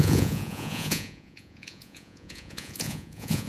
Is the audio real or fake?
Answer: fake